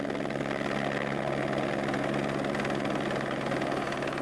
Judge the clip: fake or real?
real